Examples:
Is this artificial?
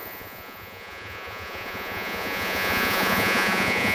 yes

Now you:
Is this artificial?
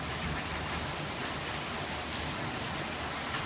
no